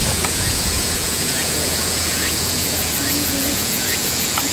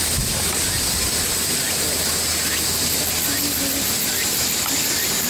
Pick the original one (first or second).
second